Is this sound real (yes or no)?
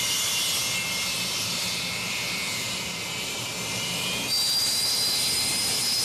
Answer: yes